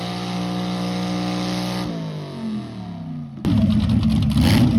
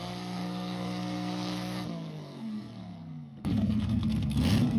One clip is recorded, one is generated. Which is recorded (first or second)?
first